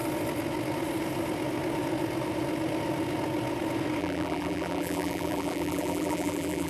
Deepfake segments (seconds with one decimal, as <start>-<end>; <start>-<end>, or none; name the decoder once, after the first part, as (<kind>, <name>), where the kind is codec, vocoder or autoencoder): 4.0-6.7 (vocoder, BigVGAN v2)